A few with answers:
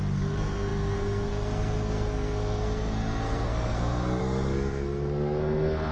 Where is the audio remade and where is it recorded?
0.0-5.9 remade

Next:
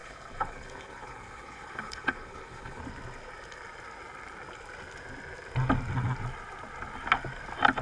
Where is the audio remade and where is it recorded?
0.0-2.8 remade; 2.8-7.8 recorded